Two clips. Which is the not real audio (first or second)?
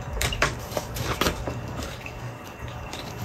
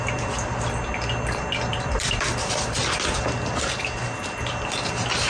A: first